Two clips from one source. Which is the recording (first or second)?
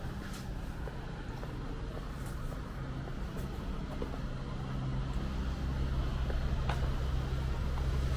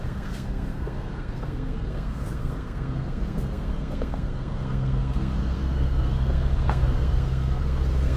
first